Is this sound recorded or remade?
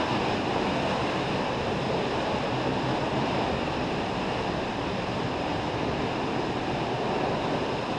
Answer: remade